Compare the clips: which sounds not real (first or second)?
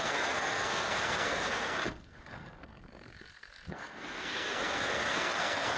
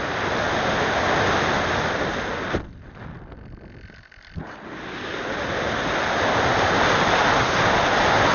first